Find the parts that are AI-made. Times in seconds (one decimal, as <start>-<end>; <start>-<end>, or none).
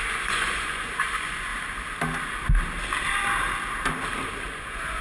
0.0-1.5; 4.5-5.0